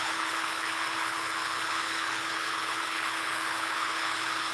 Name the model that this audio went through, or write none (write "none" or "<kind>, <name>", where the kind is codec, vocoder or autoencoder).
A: codec, HILCodec